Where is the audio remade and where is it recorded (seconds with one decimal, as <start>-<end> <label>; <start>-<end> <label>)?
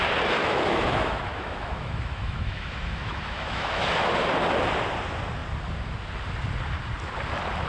0.0-0.4 recorded; 0.4-4.1 remade; 4.1-7.7 recorded